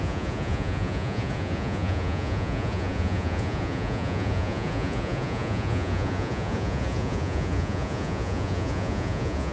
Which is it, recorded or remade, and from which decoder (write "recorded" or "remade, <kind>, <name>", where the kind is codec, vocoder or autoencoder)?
remade, vocoder, Vocos